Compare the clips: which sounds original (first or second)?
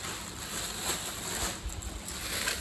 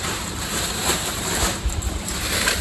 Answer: first